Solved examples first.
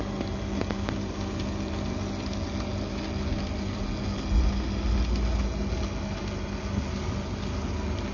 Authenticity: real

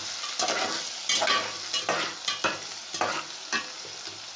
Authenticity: real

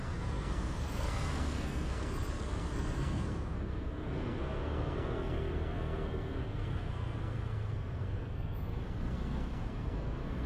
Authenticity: fake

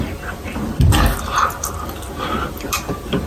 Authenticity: real